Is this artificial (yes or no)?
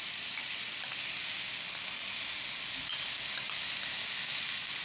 no